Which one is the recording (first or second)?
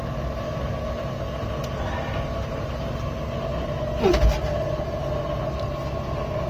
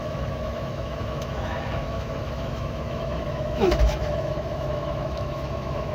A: first